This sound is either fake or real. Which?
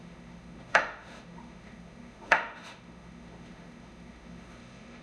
fake